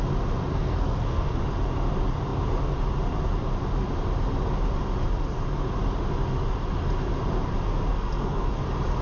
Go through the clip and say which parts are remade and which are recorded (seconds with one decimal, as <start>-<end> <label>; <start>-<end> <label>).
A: 0.0-0.5 recorded; 0.5-1.3 remade; 1.3-7.9 recorded; 7.9-8.6 remade; 8.6-9.0 recorded